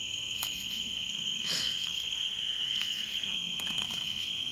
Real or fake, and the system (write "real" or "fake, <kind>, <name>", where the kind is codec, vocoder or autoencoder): fake, codec, SNAC